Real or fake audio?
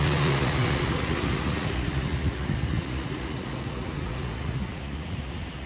fake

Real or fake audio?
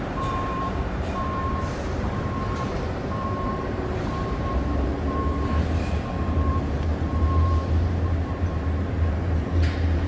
fake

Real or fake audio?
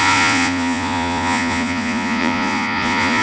fake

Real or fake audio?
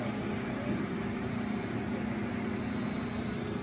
real